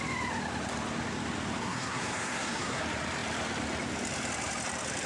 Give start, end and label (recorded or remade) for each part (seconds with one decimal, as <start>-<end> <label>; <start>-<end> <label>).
0.0-1.6 recorded; 1.6-2.8 remade; 2.8-5.1 recorded